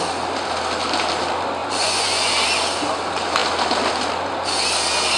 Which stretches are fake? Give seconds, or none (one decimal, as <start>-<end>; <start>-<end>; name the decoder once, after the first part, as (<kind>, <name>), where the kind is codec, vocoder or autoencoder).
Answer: 1.6-2.3 (vocoder, Vocos)